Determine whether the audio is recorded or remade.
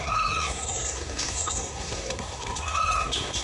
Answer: remade